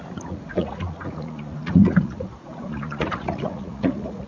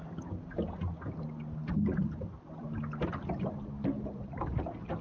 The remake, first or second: first